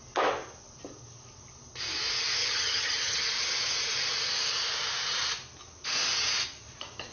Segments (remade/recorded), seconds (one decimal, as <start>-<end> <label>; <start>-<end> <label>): 0.0-2.4 recorded; 2.4-3.2 remade; 3.2-7.1 recorded